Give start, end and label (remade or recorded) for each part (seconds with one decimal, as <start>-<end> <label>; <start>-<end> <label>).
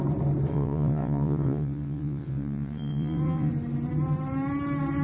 0.0-0.5 recorded; 0.5-3.5 remade; 3.5-5.0 recorded